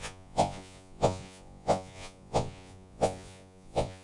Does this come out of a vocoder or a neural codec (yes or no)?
yes